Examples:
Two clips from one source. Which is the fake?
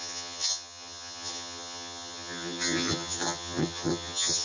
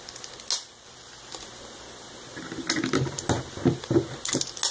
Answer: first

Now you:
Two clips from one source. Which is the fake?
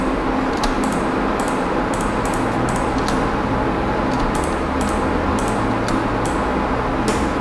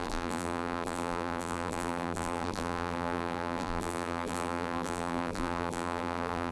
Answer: second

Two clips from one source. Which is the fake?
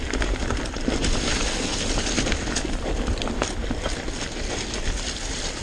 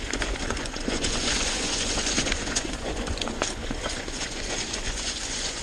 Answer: second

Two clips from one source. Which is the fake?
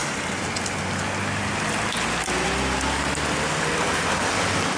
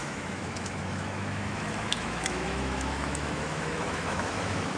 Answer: second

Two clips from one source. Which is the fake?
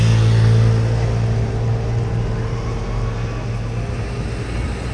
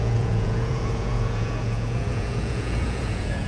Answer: second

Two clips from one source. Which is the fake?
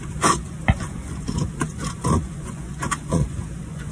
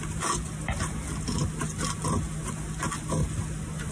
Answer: first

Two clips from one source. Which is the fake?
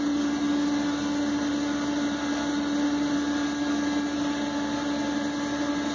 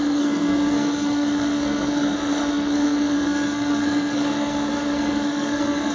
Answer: second